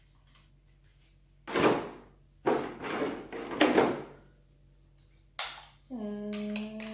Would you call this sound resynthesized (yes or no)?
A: no